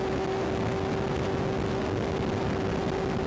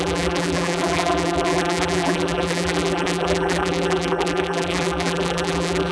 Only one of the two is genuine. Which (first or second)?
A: first